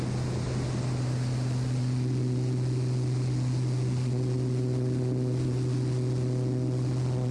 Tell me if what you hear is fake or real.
real